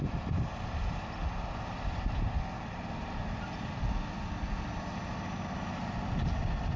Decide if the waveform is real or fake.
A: real